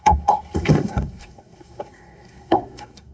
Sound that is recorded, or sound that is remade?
remade